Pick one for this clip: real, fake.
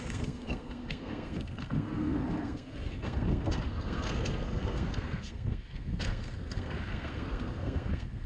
fake